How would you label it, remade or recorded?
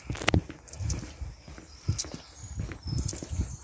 recorded